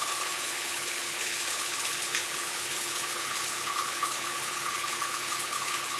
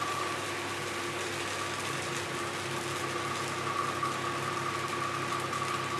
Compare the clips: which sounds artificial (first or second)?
first